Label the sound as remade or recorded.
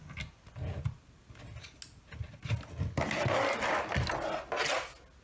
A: recorded